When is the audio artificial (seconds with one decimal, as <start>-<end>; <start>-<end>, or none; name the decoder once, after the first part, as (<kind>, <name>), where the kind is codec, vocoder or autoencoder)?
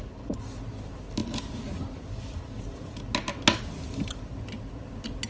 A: none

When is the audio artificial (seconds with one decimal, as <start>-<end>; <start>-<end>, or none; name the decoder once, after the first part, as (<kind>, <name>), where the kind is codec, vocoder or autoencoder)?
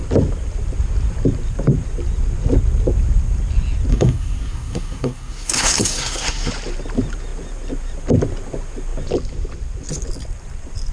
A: 3.9-6.5 (codec, SNAC)